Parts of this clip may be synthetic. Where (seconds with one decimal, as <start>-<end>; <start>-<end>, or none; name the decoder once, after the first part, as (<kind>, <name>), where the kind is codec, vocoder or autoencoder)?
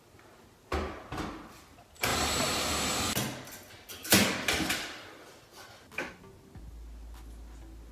none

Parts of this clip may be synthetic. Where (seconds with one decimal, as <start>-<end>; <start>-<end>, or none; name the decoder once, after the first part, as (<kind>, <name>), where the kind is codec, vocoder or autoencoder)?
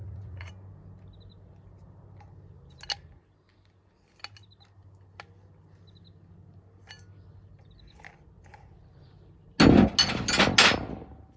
0.0-0.5 (vocoder, Vocos)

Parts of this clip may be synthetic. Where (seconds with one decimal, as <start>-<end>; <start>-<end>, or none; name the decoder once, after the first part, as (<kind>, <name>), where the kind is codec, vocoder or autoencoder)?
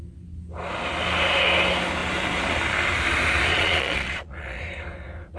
3.5-4.6 (vocoder, Vocos)